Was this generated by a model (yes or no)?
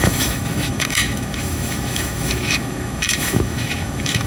yes